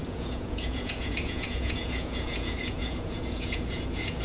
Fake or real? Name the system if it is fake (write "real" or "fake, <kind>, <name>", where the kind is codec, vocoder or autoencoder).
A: fake, vocoder, Vocos